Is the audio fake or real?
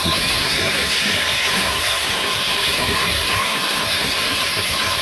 fake